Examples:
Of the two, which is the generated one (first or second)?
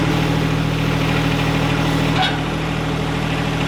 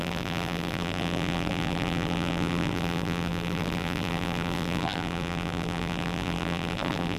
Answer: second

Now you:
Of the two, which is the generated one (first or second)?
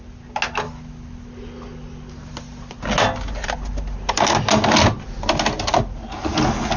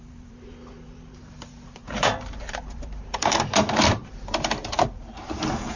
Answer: second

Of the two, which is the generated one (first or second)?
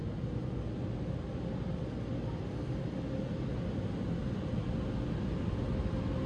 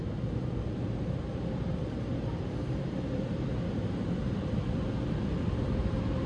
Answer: second